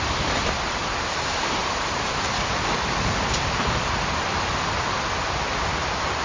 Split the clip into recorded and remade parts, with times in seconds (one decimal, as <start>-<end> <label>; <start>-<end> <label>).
0.0-0.8 recorded; 0.8-4.5 remade; 4.5-6.2 recorded